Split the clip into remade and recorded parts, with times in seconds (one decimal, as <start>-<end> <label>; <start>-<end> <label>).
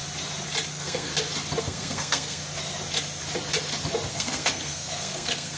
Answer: 0.0-0.7 recorded; 0.7-1.1 remade; 1.1-1.6 recorded; 1.6-2.4 remade; 2.4-4.1 recorded; 4.1-5.6 remade